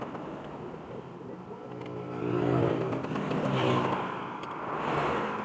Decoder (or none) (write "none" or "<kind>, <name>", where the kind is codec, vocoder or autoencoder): none